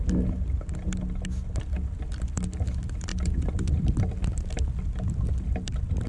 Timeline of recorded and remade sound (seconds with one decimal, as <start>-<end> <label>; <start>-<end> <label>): 0.0-6.1 recorded